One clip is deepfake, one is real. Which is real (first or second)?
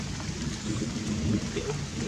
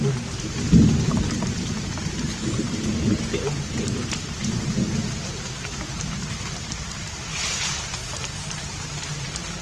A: first